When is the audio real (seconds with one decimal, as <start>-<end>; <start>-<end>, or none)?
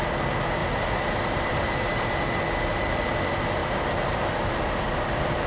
0.0-0.6; 2.1-3.6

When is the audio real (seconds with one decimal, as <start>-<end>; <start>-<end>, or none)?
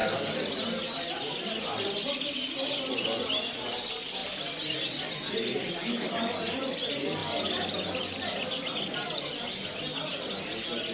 0.0-4.2; 5.7-10.9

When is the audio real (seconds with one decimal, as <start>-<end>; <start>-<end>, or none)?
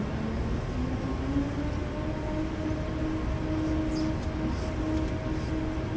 0.0-6.0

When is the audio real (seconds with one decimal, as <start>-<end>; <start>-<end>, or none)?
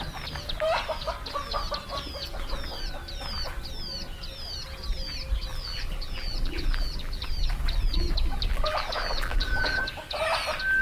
0.0-5.5; 7.3-8.3; 9.8-10.8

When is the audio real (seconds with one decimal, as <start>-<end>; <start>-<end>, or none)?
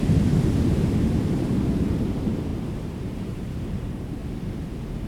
4.2-5.1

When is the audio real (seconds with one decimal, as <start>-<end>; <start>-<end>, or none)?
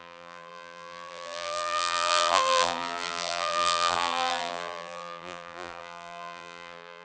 none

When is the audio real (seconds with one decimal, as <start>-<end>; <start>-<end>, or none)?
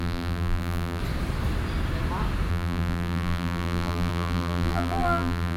1.0-2.5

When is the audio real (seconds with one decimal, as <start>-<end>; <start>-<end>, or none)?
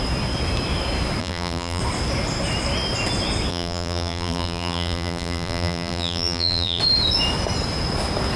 0.0-1.2; 1.8-3.5; 6.8-8.4